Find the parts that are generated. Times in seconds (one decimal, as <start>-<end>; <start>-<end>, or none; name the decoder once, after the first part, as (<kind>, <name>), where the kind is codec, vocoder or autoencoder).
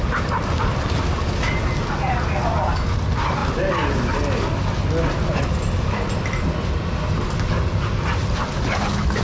none